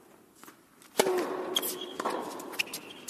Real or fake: real